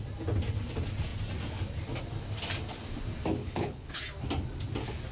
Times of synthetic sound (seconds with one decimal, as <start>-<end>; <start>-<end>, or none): 3.4-4.0